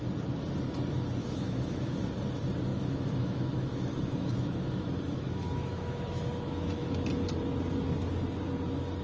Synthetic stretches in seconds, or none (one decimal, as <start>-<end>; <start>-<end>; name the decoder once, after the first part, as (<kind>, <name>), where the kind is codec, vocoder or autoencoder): 1.2-2.0 (autoencoder, DAC-VAE); 2.7-7.1